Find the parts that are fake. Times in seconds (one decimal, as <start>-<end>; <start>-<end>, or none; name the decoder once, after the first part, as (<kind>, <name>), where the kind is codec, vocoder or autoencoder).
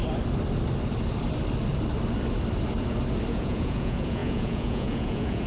3.3-5.5 (vocoder, Vocos)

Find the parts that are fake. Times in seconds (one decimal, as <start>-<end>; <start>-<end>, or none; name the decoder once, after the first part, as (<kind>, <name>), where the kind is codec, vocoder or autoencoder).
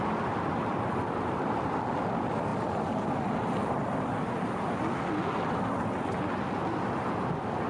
none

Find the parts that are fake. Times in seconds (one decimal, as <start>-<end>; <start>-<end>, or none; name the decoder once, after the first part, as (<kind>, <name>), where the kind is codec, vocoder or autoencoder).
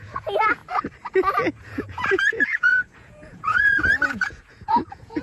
0.0-0.6 (vocoder, Vocos); 1.5-5.2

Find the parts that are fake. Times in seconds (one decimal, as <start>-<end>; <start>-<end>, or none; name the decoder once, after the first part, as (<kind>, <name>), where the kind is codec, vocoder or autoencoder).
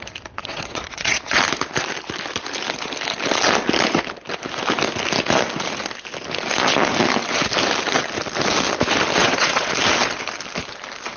0.4-1.4 (vocoder, WaveNeXt); 9.2-9.7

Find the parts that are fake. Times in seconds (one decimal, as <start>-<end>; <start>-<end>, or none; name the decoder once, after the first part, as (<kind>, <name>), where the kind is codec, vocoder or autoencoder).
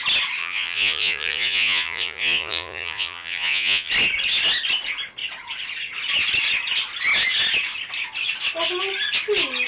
0.4-3.9 (vocoder, Vocos)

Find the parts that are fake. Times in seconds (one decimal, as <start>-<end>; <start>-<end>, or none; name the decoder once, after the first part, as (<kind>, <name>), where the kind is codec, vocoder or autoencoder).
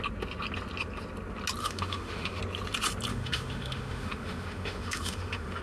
1.6-2.4 (autoencoder, DAC-VAE); 3.1-5.6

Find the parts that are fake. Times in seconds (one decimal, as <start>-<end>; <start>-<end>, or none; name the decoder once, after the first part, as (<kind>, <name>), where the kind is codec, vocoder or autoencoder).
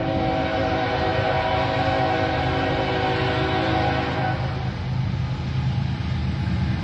none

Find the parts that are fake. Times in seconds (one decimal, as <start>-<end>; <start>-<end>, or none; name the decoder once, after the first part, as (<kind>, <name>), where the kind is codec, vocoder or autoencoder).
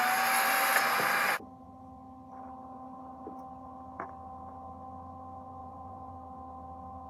5.6-6.1 (vocoder, BigVGAN v2)